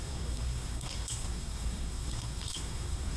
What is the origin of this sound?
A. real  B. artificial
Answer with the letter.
B